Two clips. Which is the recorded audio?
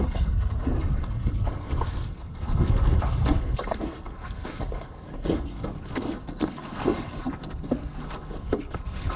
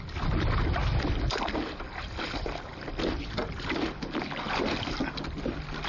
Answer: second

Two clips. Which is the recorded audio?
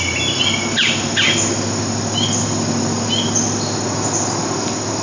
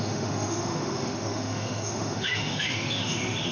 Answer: first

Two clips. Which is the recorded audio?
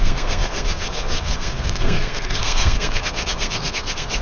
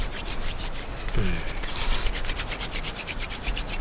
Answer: second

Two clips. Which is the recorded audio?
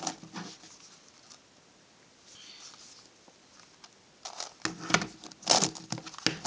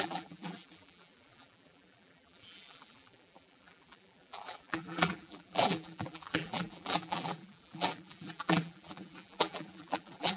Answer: first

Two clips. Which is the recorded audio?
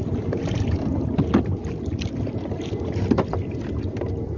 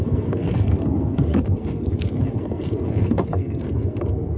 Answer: first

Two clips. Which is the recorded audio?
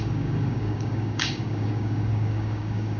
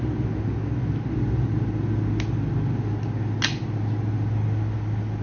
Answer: second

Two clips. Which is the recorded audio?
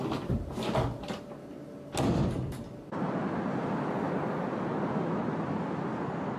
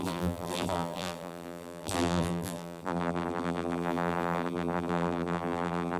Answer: first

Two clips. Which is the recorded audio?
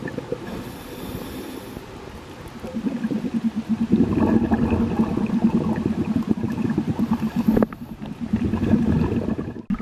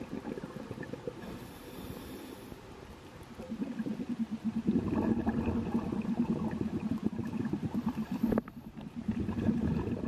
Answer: first